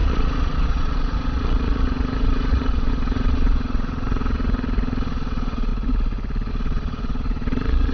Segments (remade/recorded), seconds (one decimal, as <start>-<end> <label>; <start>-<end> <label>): 0.0-5.7 remade; 5.7-6.5 recorded; 6.5-7.9 remade

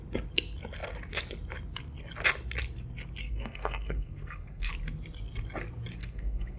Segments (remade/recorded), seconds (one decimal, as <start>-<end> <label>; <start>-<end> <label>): 0.0-3.2 recorded; 3.2-4.7 remade; 4.7-6.0 recorded; 6.0-6.6 remade